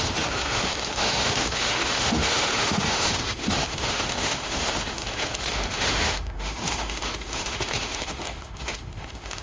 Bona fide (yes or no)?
no